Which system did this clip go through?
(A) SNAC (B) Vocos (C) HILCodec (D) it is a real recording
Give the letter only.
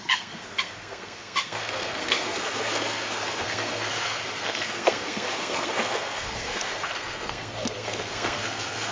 A